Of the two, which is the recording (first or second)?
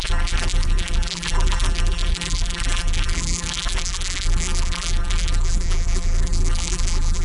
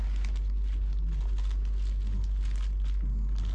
second